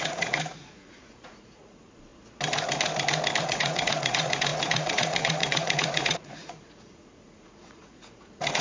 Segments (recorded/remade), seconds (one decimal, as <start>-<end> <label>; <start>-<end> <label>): 0.0-2.1 remade; 2.1-3.4 recorded; 3.4-8.6 remade